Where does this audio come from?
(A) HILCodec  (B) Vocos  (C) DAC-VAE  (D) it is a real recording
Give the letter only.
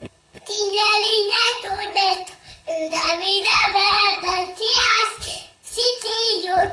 A